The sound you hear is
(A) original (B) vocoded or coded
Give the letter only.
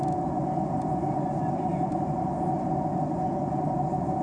A